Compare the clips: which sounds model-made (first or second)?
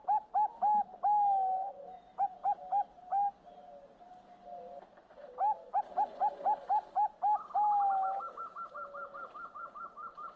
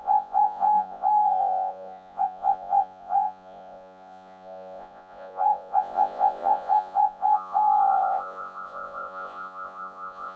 second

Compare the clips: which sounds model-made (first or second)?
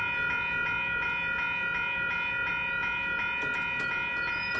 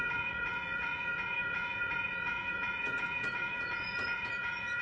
second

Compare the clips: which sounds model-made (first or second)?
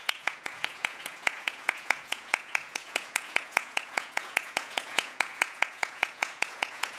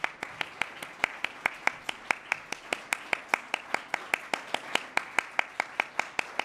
first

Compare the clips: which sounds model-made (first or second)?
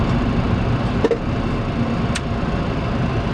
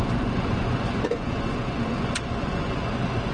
second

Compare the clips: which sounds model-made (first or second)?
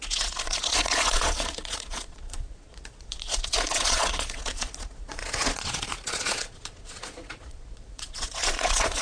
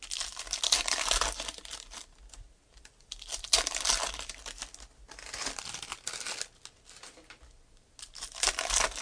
first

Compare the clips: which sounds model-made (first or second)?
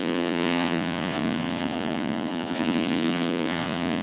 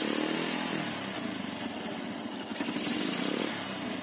first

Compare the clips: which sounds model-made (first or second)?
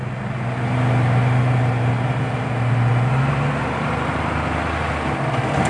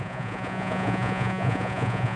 second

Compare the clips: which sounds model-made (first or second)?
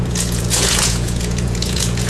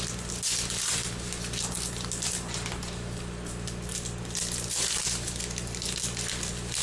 first